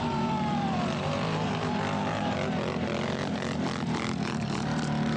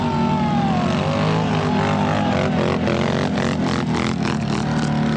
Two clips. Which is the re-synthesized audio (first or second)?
first